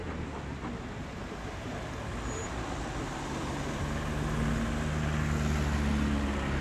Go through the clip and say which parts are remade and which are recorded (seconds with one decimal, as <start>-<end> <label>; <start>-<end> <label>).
0.0-6.6 recorded